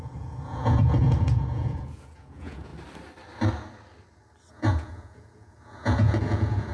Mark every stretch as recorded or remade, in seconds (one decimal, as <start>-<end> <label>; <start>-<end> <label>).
0.0-2.7 remade; 2.7-4.5 recorded; 4.5-6.7 remade